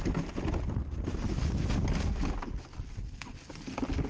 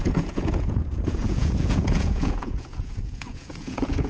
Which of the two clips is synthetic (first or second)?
second